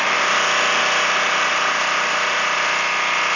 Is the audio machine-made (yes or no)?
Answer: no